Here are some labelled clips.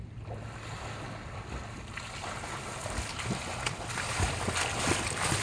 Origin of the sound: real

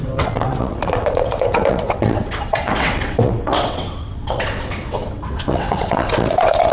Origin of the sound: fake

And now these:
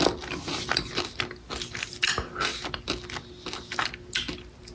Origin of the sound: real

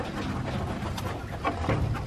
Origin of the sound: real